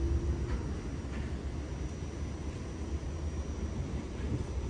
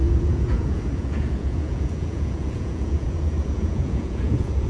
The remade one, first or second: second